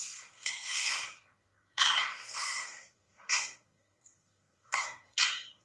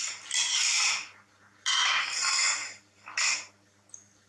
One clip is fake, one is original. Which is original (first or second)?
second